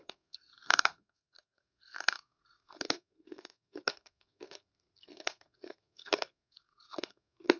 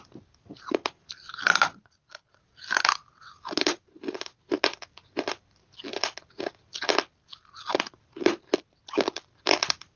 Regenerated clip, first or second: first